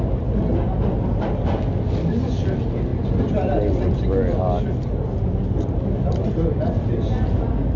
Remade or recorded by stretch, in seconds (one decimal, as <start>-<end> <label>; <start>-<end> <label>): 0.0-7.8 recorded